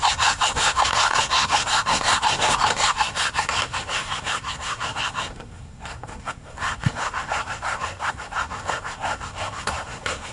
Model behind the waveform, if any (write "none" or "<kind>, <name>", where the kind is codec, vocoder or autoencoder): codec, SNAC